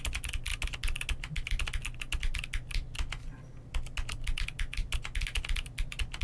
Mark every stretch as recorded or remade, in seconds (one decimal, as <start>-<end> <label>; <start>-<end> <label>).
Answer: 0.0-6.2 recorded